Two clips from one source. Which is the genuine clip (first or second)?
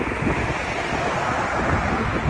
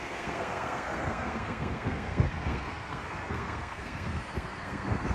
first